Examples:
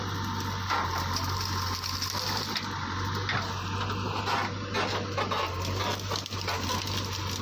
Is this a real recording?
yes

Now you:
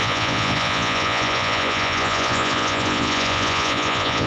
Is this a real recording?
no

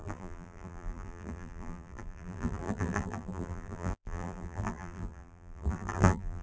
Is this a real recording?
no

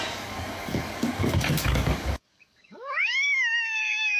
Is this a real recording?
no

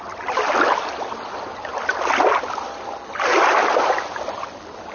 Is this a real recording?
yes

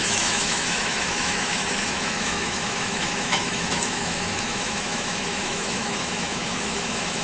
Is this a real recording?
no